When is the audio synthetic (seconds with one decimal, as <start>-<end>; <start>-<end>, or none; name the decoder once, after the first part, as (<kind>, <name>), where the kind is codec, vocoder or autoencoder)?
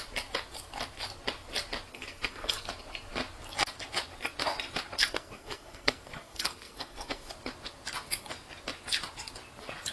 1.9-2.7 (codec, SNAC); 5.1-7.3